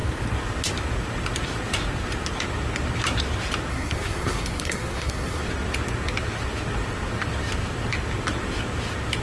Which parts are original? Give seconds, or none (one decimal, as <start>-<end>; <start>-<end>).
0.0-3.7; 5.4-9.2